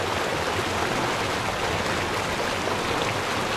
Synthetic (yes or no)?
no